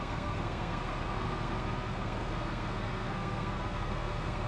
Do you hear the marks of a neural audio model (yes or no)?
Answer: yes